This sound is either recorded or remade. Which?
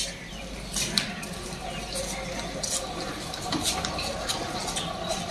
recorded